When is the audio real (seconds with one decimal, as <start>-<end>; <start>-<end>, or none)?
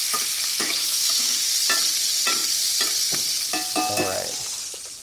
0.0-0.5; 1.4-5.0